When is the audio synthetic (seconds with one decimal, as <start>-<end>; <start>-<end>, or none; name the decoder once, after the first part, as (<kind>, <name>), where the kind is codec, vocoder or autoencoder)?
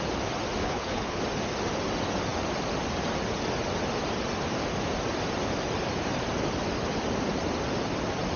0.6-1.2 (codec, HILCodec)